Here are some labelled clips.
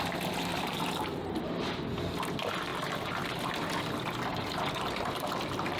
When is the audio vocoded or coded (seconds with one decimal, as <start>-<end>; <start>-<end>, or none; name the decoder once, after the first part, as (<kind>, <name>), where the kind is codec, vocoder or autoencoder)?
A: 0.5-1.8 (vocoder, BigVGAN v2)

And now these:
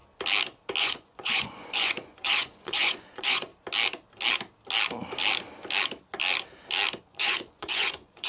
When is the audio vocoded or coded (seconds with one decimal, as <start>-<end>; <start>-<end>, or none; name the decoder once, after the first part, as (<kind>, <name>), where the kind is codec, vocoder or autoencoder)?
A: 0.8-3.5 (vocoder, Vocos); 7.0-8.3

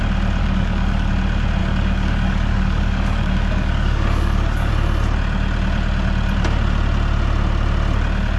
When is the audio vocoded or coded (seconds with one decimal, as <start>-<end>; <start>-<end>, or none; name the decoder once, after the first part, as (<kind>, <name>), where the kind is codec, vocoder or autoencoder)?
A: 0.4-1.1 (codec, DAC); 1.6-4.7

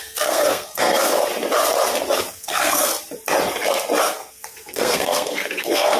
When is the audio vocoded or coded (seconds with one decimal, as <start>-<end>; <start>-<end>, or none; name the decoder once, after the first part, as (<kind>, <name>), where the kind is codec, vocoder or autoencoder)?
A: 0.0-1.2 (codec, SNAC); 2.3-2.9; 4.0-6.0

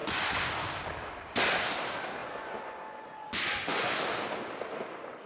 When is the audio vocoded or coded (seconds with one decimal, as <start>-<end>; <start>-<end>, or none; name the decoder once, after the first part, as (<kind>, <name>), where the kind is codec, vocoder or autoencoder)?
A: 0.0-0.5 (vocoder, Vocos); 2.2-4.0

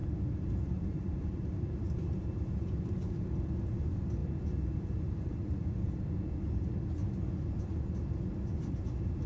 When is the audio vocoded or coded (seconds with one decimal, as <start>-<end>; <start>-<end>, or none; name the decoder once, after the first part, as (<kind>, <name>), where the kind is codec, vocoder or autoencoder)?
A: 0.0-2.1 (vocoder, BigVGAN v2)